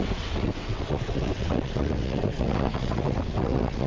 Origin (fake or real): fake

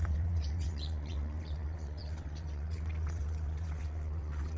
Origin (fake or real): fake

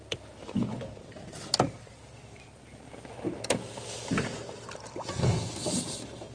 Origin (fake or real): real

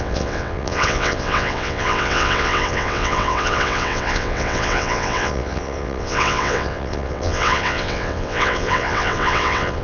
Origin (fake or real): fake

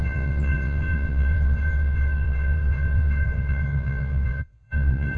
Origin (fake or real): fake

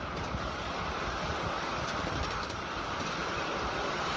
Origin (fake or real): real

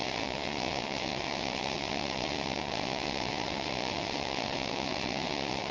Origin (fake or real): fake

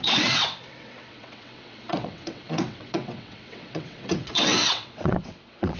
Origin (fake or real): fake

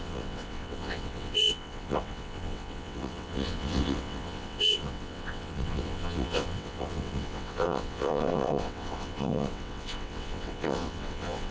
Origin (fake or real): fake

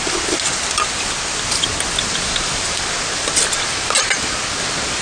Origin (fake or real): real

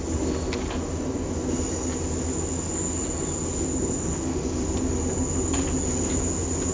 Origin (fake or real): real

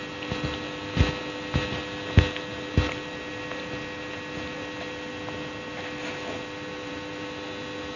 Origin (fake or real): real